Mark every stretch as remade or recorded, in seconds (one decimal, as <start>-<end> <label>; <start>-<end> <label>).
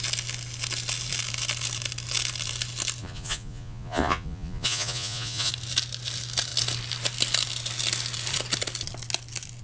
0.0-3.0 recorded; 3.0-5.5 remade; 5.5-9.6 recorded